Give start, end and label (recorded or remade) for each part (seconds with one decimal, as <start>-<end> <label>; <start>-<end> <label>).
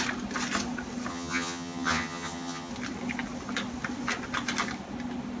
0.0-1.1 recorded; 1.1-2.7 remade; 2.7-5.4 recorded